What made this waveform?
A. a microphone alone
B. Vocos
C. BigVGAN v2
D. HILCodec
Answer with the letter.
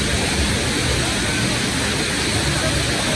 A